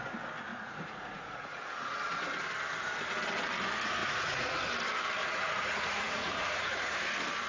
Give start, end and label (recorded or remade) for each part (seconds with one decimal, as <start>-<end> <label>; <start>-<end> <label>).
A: 0.0-0.5 recorded; 0.5-1.7 remade; 1.7-4.0 recorded; 4.0-4.6 remade; 4.6-5.2 recorded; 5.2-7.0 remade; 7.0-7.5 recorded